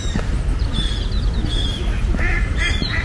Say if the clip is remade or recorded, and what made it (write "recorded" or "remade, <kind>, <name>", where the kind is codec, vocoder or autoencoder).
recorded